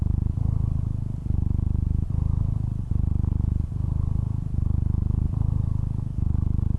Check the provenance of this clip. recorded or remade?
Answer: recorded